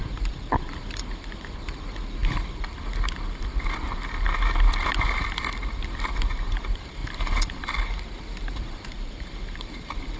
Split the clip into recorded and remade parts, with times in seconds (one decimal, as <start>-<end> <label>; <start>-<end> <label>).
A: 0.0-2.2 remade; 2.2-6.3 recorded; 6.3-7.0 remade; 7.0-8.7 recorded; 8.7-10.2 remade